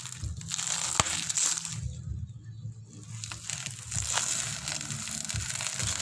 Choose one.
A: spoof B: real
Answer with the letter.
B